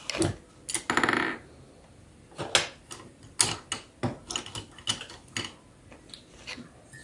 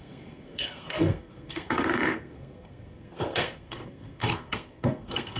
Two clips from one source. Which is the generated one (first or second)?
second